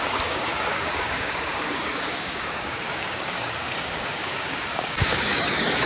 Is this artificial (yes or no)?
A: yes